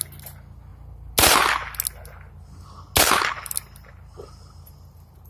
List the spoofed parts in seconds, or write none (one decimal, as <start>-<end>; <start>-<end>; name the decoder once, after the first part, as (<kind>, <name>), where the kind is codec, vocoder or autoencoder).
none